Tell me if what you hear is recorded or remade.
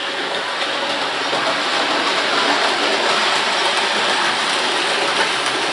recorded